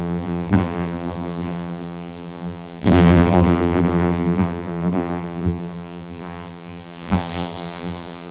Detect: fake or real fake